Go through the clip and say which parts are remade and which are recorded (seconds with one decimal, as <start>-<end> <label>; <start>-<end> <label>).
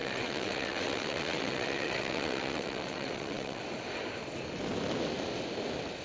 0.0-3.6 remade; 3.6-6.0 recorded